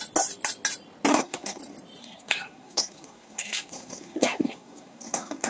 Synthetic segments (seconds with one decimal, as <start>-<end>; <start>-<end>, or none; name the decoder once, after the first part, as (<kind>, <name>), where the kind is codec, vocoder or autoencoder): 1.1-1.6 (codec, SNAC); 2.0-5.5

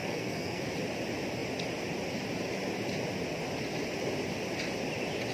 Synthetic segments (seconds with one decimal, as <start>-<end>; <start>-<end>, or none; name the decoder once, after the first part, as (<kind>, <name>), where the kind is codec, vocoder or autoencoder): 0.0-0.7 (codec, SNAC)

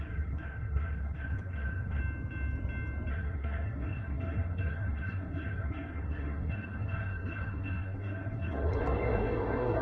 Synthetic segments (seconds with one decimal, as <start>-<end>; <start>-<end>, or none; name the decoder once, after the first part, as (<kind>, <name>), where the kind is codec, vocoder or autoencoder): 0.0-2.0 (codec, SNAC); 3.1-9.8

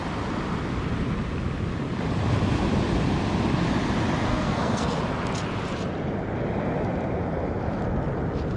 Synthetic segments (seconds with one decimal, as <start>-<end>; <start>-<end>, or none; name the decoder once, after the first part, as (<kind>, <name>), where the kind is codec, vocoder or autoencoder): 4.3-5.0 (codec, SNAC)

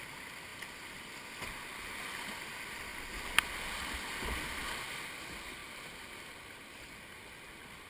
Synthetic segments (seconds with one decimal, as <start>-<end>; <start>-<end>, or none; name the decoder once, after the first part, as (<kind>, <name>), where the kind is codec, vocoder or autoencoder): none